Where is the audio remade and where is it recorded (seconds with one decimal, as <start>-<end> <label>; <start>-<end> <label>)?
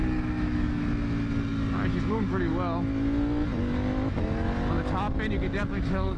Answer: 0.0-0.8 remade; 0.8-2.1 recorded; 2.1-2.5 remade; 2.5-5.7 recorded; 5.7-6.2 remade